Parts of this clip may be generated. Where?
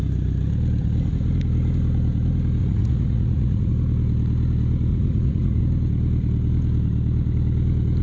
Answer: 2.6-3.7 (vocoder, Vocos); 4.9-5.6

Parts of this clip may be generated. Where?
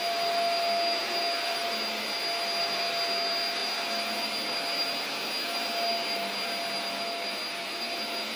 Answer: none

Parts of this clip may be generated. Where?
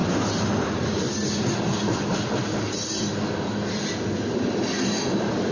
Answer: none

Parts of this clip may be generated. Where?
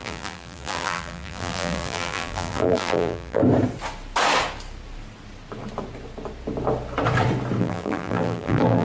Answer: 0.0-3.4 (vocoder, BigVGAN v2); 7.6-8.8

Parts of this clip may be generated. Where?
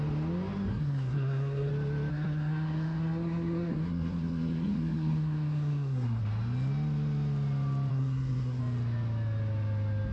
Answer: 0.7-1.7 (codec, SNAC); 2.1-6.2; 7.9-8.6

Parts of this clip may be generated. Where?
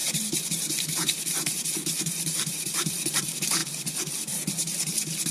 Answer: 0.0-3.2 (vocoder, BigVGAN v2)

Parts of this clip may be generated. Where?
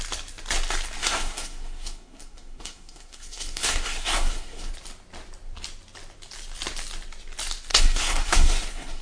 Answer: 1.0-4.7 (codec, SNAC); 7.7-9.0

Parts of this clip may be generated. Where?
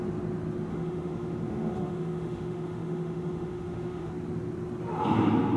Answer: 0.7-4.1 (autoencoder, DAC-VAE)